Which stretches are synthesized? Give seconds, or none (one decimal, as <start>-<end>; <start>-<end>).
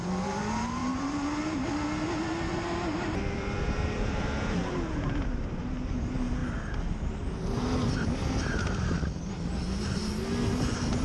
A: 0.8-1.7; 2.5-5.7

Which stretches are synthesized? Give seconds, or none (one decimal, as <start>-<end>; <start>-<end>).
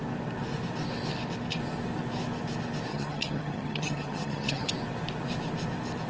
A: 2.9-4.7